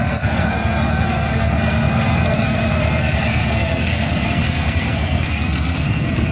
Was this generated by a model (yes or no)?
yes